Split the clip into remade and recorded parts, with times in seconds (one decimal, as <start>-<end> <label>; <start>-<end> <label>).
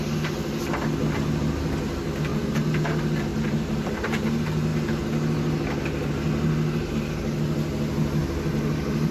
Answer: 0.0-2.3 recorded; 2.3-2.8 remade; 2.8-3.3 recorded; 3.3-3.9 remade; 3.9-9.1 recorded